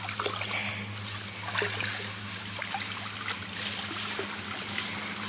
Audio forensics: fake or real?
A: real